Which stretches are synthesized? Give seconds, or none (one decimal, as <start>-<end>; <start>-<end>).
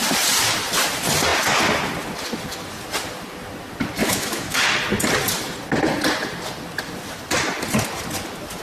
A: 4.0-4.6